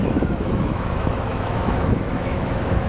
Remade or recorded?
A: remade